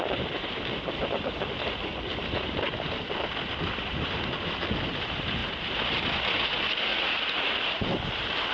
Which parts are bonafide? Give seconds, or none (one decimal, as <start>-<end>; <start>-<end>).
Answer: 0.0-6.9; 7.8-8.5